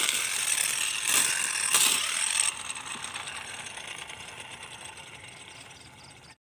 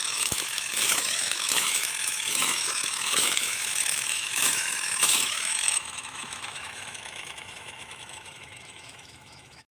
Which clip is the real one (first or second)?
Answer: first